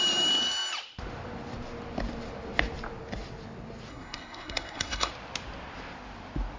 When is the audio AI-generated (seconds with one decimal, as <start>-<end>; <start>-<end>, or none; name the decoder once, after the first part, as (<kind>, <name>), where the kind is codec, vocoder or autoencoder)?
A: 3.9-5.1 (codec, SNAC)

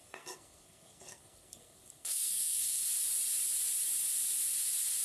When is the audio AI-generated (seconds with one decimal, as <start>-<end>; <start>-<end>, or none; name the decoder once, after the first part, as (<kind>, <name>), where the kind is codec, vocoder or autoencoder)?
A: 0.0-2.8 (codec, SNAC)

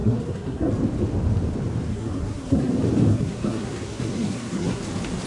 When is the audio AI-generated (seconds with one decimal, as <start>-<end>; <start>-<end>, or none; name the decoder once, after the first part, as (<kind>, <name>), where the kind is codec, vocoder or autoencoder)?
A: 0.0-0.7 (codec, SNAC); 1.9-2.7; 3.1-4.8

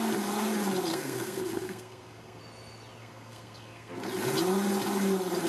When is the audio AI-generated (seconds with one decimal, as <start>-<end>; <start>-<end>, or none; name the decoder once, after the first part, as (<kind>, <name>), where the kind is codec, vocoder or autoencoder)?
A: 0.9-2.4 (codec, SNAC); 3.0-3.9

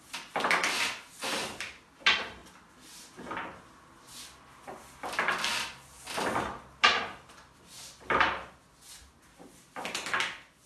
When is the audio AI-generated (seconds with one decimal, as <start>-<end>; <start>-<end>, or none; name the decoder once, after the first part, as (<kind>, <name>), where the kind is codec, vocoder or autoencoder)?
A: none

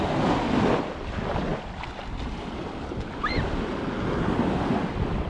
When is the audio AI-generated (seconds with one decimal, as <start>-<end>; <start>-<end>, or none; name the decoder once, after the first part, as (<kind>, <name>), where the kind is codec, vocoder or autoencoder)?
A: none

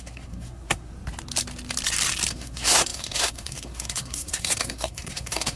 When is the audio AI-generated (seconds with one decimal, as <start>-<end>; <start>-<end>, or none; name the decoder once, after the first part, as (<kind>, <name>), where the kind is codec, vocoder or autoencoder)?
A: 0.0-0.9 (codec, SNAC); 2.3-5.6

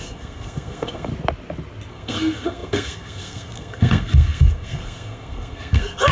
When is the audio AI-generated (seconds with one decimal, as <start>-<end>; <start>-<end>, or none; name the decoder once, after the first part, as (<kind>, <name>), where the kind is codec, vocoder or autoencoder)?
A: 0.0-1.1 (codec, SNAC); 1.9-6.1